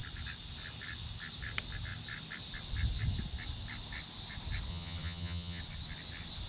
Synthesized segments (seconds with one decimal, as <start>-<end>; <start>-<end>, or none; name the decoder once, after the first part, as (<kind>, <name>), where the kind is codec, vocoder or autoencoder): 4.7-5.6 (vocoder, HiFi-GAN)